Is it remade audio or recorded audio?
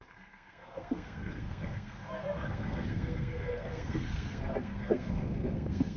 remade